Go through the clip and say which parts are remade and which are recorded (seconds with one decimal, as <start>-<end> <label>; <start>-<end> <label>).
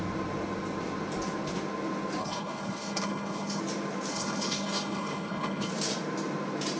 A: 0.0-2.2 recorded; 2.2-3.6 remade; 3.6-4.1 recorded; 4.1-5.7 remade; 5.7-6.8 recorded